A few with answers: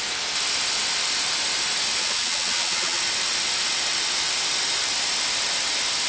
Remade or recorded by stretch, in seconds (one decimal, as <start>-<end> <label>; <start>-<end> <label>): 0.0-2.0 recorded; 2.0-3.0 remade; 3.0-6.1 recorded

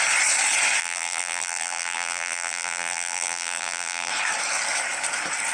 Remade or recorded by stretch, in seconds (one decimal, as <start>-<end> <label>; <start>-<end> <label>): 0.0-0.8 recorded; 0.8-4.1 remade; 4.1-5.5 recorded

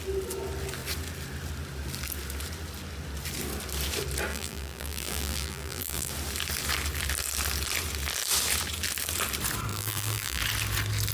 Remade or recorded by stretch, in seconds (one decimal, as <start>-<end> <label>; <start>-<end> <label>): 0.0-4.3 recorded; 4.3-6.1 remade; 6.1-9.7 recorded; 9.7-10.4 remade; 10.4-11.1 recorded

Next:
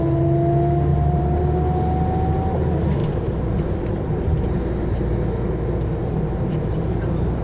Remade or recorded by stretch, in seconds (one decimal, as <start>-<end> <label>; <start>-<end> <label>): 0.0-0.9 recorded; 0.9-1.4 remade; 1.4-3.0 recorded; 3.0-4.6 remade; 4.6-6.0 recorded; 6.0-7.4 remade